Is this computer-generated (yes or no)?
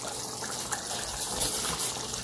no